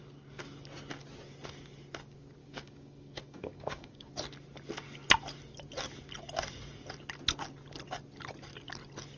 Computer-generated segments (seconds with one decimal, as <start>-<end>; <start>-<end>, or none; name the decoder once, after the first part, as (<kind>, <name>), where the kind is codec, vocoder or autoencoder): 2.4-4.1 (codec, DAC)